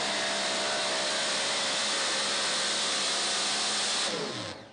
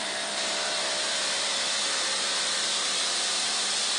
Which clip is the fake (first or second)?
second